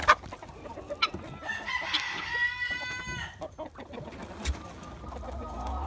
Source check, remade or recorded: recorded